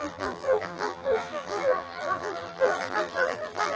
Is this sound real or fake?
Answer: fake